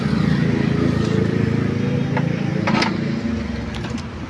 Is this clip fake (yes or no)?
no